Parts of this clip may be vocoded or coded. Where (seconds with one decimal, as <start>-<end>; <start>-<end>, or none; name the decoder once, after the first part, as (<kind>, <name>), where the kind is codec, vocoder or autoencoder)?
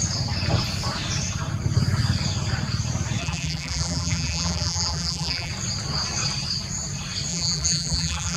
3.2-5.5 (vocoder, BigVGAN v2); 7.3-8.4